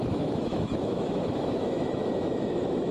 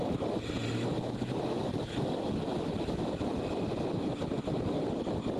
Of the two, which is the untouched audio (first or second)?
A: second